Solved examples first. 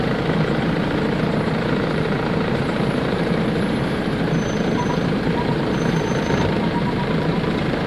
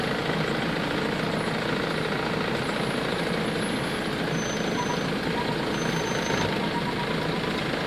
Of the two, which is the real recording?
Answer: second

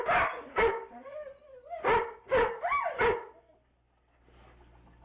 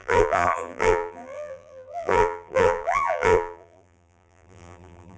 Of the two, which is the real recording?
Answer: first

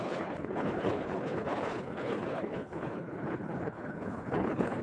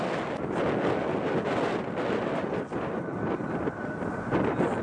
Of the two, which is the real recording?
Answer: second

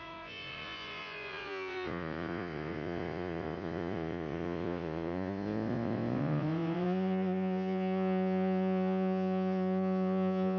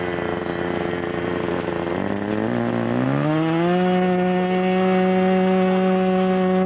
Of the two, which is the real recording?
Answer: second